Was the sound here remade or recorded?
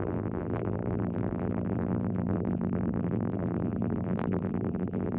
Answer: remade